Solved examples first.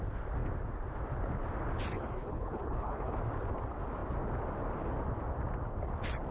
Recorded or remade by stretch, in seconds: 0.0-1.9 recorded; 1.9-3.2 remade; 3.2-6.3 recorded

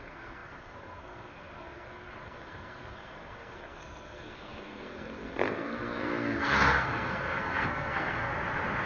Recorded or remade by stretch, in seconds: 0.0-8.3 remade; 8.3-8.9 recorded